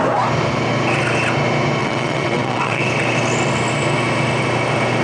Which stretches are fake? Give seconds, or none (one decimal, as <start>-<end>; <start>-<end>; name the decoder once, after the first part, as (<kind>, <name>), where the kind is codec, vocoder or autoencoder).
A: 1.8-2.9 (vocoder, WaveNeXt)